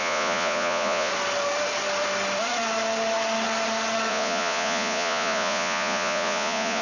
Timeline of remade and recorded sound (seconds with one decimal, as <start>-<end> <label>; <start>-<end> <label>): 0.0-1.1 remade; 1.1-4.1 recorded; 4.1-6.8 remade